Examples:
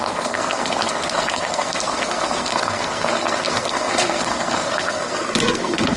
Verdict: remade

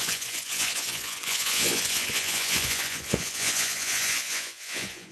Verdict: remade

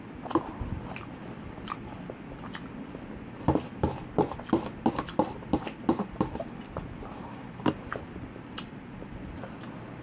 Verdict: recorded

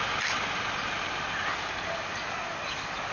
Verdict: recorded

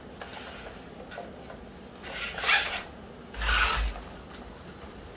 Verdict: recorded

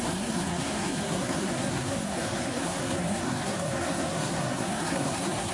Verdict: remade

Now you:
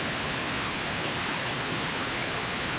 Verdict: remade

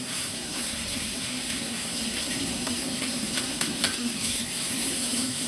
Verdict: remade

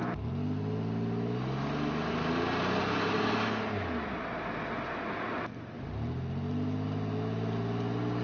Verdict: recorded